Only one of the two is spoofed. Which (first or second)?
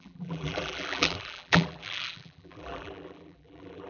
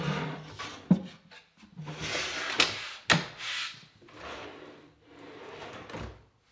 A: first